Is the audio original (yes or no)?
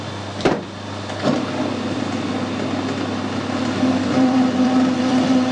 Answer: no